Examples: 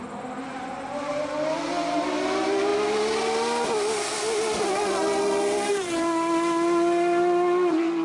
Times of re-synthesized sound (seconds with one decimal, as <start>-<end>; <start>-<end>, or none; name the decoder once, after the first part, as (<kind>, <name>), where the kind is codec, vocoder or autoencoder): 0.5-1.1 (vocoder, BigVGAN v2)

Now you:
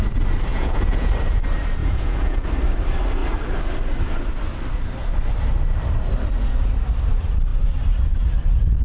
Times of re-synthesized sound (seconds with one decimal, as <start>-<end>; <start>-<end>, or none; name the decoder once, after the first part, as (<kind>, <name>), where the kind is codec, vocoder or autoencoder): 0.5-1.1 (vocoder, Vocos); 1.8-2.5

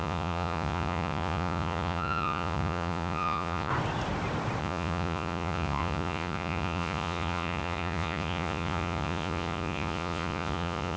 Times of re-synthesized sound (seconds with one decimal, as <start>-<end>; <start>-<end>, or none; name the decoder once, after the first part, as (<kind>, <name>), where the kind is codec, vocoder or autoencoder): 0.0-3.7 (vocoder, Vocos); 4.6-11.0

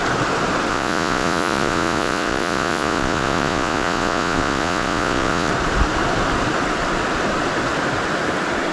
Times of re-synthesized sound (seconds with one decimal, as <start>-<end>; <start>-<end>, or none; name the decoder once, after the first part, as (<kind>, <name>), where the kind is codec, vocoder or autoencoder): 0.7-5.5 (vocoder, Vocos)

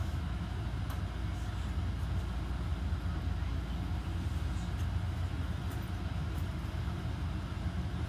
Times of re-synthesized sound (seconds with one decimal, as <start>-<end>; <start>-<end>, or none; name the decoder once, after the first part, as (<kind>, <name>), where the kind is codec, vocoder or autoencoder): 0.0-0.8 (autoencoder, DAC-VAE)